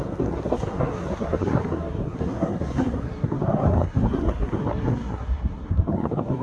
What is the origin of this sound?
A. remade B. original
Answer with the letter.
A